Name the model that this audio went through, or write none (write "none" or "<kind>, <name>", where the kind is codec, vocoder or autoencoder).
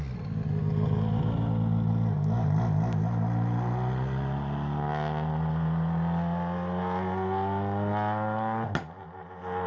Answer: none